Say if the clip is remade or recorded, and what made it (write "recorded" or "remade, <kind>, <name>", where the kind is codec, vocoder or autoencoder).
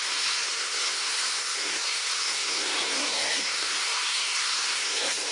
remade, codec, SNAC